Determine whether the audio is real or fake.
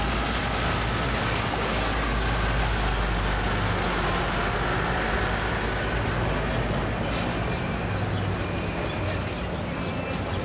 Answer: real